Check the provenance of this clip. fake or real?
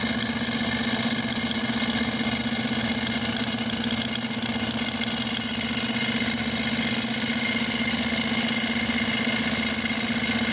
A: real